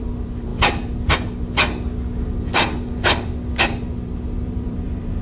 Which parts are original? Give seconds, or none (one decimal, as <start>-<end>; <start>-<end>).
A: 0.5-3.6